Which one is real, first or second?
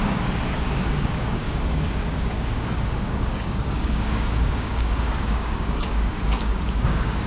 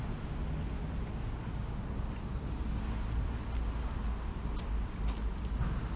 second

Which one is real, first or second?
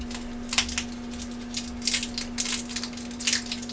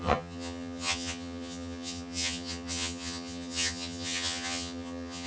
first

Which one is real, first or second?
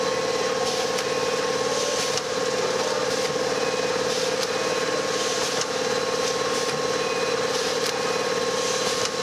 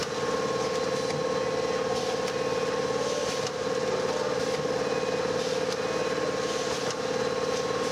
second